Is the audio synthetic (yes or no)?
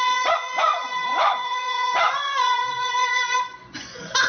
yes